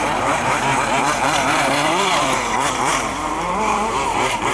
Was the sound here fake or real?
fake